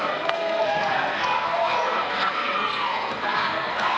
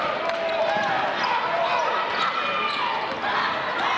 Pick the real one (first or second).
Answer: second